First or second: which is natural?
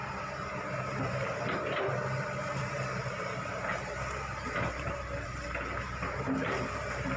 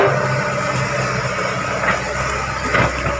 second